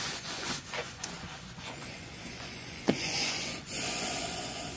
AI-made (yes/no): yes